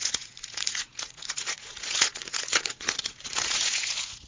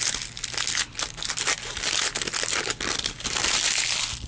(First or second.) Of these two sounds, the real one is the second